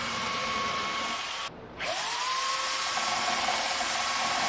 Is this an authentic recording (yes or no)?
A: no